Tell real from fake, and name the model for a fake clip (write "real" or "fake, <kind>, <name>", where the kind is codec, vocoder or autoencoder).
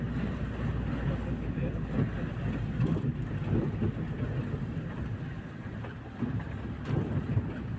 real